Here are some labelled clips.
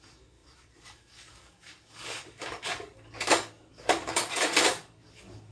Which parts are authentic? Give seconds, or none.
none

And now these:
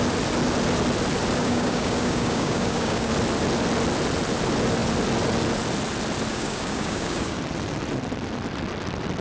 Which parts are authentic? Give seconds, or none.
0.0-1.4; 3.1-6.3; 7.4-9.2

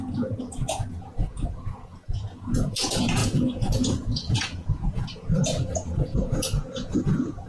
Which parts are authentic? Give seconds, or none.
none

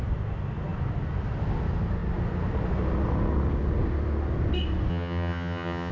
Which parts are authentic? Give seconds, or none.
0.0-4.9

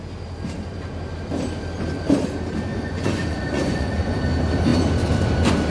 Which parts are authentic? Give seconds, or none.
0.0-2.7; 4.2-5.7